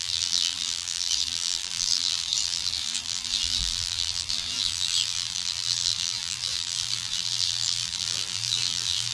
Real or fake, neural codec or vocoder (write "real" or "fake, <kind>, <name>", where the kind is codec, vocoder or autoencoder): fake, vocoder, BigVGAN v2